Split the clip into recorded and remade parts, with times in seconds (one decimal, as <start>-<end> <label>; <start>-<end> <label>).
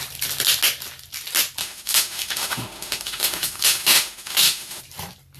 0.0-1.6 recorded; 1.6-4.8 remade; 4.8-5.4 recorded